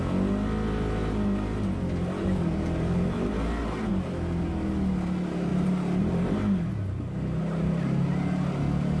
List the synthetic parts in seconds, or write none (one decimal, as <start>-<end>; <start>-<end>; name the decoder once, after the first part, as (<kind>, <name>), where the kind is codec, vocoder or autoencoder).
2.2-3.9 (vocoder, BigVGAN v2); 5.5-6.4